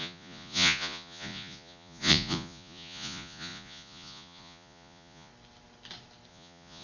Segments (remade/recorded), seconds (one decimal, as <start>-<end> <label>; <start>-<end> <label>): 0.0-5.3 remade; 5.3-6.3 recorded; 6.3-6.8 remade